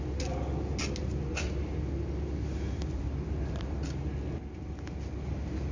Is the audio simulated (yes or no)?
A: no